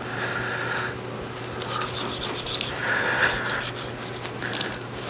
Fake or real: real